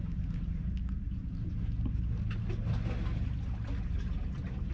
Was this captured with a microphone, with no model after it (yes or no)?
yes